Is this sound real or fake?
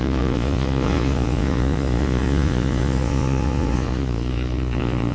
fake